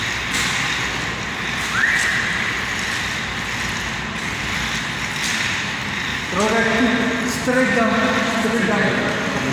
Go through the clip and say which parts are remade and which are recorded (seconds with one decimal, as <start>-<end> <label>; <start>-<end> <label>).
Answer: 0.0-9.5 recorded